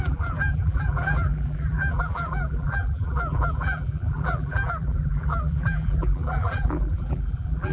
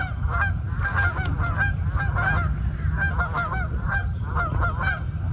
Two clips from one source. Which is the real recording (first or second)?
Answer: second